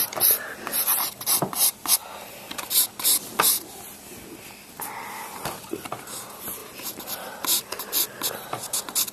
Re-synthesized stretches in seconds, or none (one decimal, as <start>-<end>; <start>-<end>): none